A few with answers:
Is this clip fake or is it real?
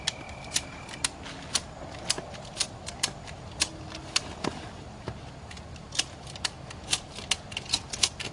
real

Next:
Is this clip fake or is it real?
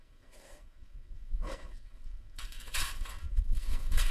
fake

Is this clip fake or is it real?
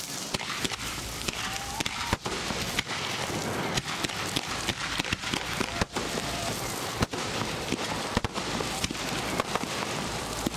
fake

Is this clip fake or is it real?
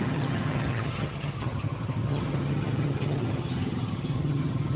fake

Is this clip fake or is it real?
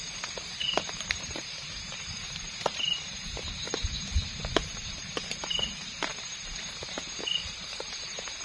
fake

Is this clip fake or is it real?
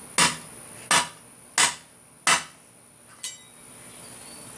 real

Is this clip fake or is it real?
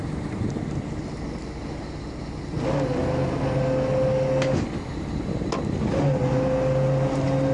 real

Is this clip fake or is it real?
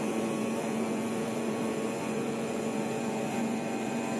fake